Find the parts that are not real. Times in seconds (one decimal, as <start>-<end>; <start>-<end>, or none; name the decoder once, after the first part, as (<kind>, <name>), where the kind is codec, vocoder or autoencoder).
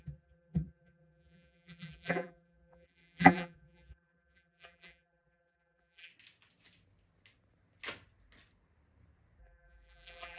0.0-6.1 (vocoder, BigVGAN v2); 9.4-10.4